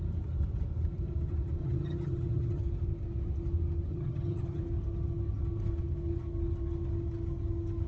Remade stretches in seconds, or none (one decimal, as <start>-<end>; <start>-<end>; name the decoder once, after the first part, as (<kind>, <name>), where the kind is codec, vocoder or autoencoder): 1.6-2.6 (vocoder, HiFi-GAN); 3.9-4.6